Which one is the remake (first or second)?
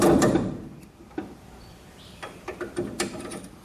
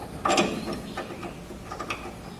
first